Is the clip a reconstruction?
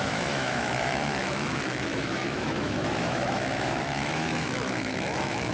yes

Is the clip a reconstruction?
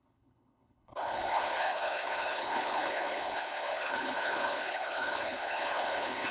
yes